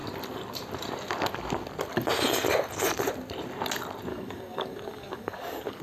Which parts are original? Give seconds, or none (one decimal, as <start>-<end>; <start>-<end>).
0.0-4.1